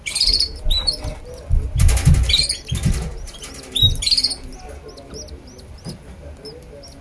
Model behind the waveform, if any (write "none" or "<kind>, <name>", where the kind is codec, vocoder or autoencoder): none